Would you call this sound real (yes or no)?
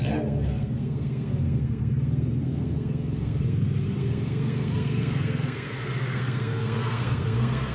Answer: no